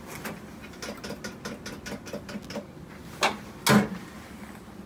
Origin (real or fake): real